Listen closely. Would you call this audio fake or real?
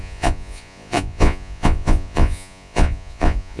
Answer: fake